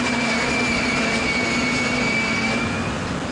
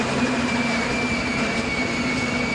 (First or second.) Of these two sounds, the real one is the first